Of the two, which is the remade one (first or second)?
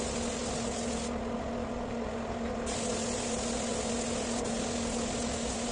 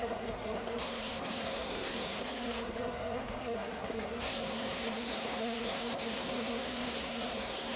second